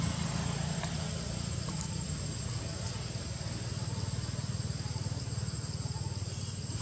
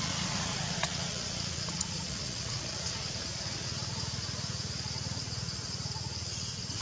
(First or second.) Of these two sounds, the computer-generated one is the second